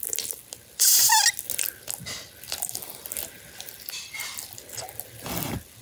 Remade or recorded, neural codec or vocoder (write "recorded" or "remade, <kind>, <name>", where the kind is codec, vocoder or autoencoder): recorded